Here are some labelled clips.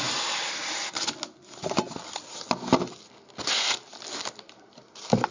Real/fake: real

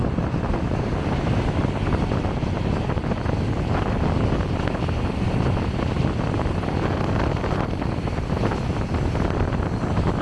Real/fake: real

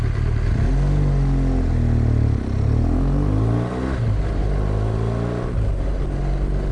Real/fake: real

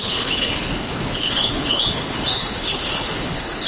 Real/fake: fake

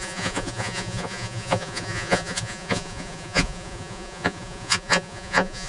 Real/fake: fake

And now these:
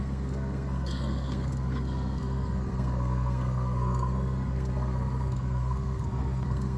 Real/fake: fake